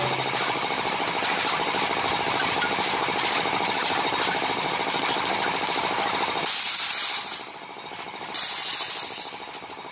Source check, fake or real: real